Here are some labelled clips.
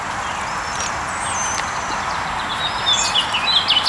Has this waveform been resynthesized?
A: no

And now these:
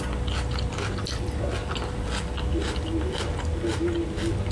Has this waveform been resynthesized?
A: no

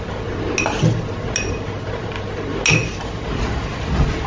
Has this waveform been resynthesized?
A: no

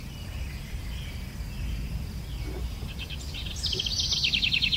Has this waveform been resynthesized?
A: no